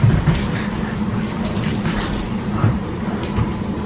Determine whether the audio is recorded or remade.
remade